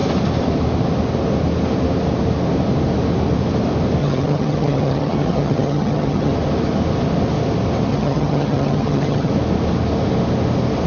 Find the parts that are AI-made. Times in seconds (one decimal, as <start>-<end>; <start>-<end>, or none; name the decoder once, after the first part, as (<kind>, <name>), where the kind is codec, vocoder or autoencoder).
4.0-6.3 (vocoder, HiFi-GAN); 7.9-9.3